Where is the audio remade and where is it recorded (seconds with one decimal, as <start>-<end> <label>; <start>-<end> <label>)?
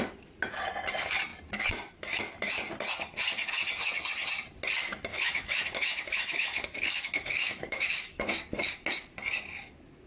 0.0-5.1 recorded; 5.1-8.3 remade; 8.3-10.1 recorded